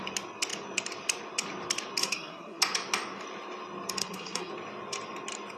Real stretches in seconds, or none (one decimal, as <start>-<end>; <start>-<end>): 0.0-2.0; 2.6-4.0; 4.5-5.6